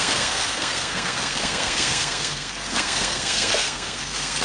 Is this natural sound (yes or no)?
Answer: no